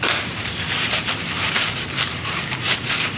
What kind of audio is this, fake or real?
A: fake